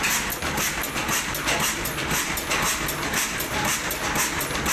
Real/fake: real